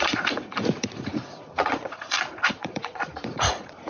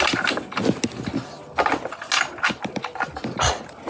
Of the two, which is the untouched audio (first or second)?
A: second